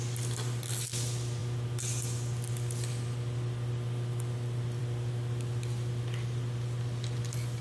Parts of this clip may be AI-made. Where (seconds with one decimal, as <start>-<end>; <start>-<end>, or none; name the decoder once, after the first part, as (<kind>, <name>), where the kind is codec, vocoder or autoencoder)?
none

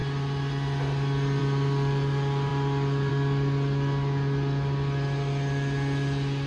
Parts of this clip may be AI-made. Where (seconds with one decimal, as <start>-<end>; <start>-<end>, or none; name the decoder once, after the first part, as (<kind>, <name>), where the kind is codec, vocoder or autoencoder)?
none

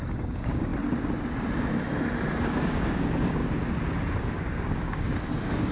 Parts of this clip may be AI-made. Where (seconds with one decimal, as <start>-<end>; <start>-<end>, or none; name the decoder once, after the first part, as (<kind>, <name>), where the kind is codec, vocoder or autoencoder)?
0.0-0.7 (codec, DAC); 2.4-3.4; 4.2-5.7

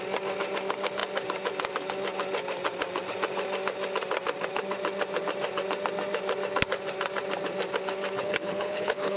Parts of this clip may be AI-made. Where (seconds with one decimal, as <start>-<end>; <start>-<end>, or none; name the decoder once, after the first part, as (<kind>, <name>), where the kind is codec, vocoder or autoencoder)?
8.2-9.2 (codec, HILCodec)

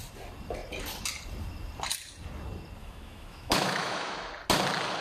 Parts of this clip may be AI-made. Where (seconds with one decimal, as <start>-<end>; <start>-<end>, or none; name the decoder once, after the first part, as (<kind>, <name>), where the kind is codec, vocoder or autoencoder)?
2.8-4.3 (autoencoder, DAC-VAE)

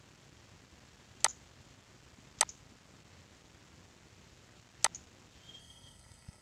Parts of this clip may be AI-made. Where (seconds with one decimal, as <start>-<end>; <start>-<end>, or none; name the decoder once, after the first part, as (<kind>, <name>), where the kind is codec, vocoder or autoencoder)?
5.6-6.4 (codec, SNAC)

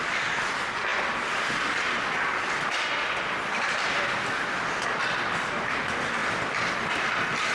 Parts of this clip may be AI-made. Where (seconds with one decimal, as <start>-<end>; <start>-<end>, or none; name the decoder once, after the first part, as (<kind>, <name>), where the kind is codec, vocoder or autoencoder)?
6.2-7.1 (vocoder, BigVGAN v2)

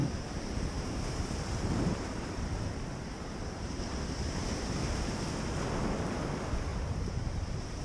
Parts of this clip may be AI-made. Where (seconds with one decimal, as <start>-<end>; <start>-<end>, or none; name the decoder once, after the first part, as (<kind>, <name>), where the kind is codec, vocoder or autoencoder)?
0.0-4.5 (vocoder, BigVGAN v2); 6.7-7.8